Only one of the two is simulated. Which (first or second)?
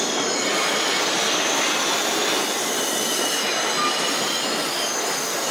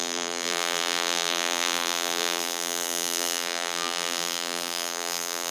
second